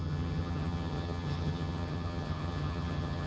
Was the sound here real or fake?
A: fake